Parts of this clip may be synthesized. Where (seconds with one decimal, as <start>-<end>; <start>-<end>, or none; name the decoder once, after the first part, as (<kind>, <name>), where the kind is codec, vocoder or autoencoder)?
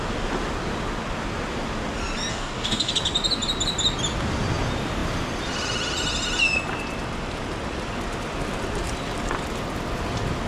2.3-2.9 (codec, DAC)